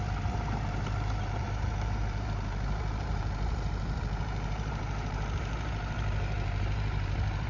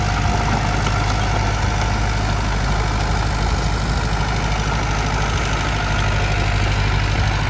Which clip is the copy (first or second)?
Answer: first